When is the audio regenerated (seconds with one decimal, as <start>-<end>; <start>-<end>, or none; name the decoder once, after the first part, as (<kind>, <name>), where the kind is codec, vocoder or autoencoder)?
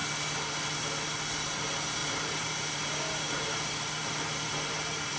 2.0-5.2 (vocoder, BigVGAN v2)